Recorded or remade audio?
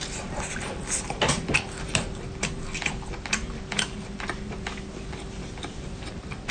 recorded